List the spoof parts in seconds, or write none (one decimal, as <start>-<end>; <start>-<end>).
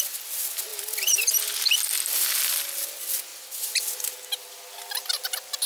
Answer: 3.3-3.8